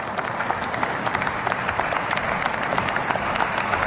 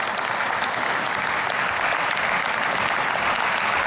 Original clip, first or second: second